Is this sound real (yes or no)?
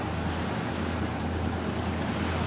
yes